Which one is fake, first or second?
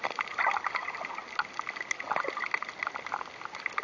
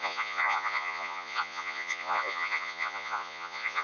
second